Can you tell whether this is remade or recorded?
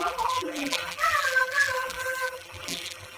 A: remade